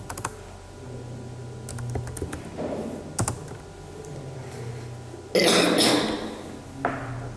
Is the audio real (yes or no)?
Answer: yes